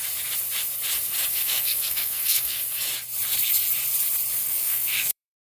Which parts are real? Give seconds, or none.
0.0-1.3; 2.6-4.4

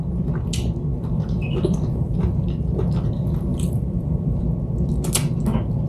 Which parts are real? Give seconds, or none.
0.0-0.9; 2.8-3.5; 4.4-5.9

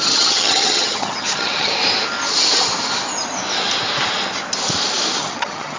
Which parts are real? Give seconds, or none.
1.7-5.2

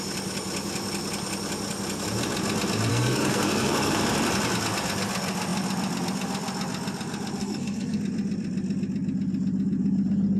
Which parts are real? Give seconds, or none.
0.0-2.9; 4.0-7.4; 8.0-10.4

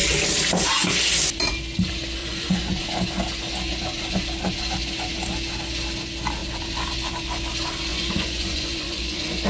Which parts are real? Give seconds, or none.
0.0-2.2; 2.8-7.9

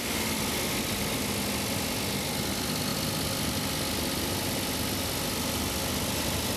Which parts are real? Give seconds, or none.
0.0-6.6

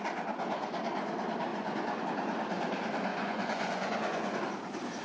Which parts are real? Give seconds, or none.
0.0-1.5; 2.0-3.1; 4.4-5.0

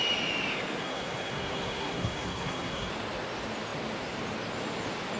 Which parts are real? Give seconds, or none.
0.0-0.8; 2.9-5.2